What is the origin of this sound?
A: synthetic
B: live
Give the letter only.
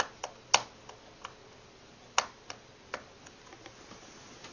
B